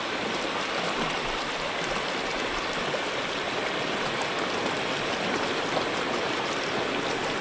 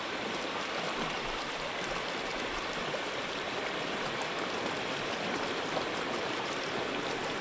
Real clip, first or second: first